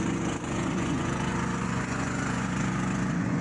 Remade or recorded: remade